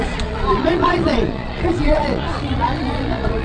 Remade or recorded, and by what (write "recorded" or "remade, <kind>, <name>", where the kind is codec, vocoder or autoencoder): remade, vocoder, Vocos